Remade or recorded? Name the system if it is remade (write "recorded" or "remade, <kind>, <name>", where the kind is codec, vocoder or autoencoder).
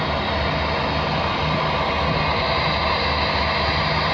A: recorded